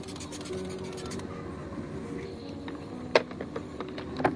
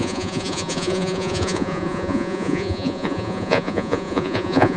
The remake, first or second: second